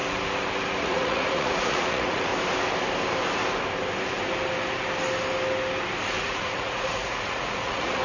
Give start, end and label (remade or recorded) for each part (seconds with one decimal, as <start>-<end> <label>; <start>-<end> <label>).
0.0-0.8 recorded; 0.8-2.3 remade; 2.3-6.2 recorded; 6.2-8.0 remade